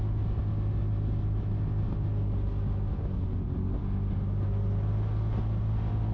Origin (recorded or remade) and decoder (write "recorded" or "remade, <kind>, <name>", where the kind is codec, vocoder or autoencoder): recorded